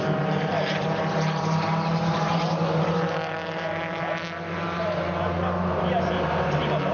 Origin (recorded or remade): remade